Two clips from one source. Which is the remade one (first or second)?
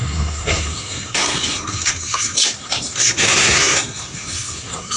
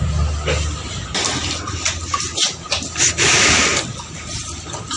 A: first